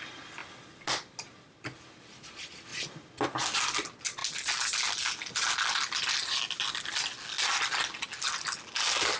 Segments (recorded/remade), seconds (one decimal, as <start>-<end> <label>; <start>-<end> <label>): 0.0-9.2 recorded

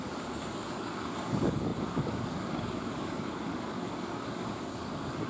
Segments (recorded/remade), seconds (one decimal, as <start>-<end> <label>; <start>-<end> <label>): 0.0-5.3 remade